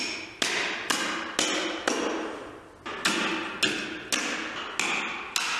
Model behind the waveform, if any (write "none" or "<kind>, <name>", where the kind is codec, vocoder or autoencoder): none